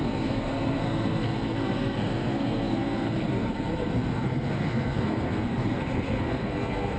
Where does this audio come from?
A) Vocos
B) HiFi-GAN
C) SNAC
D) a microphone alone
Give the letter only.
C